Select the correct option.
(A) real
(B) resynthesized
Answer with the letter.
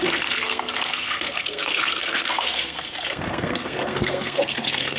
B